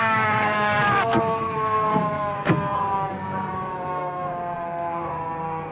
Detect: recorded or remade remade